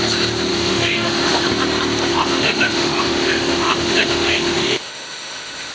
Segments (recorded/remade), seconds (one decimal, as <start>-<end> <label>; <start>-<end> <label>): 0.0-0.5 recorded; 0.5-1.5 remade; 1.5-2.1 recorded; 2.1-5.7 remade